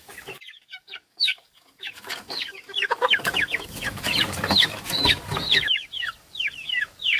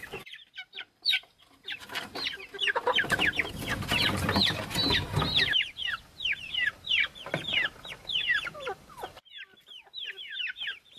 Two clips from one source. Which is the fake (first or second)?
first